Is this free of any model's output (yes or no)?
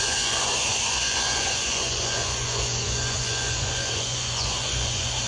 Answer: no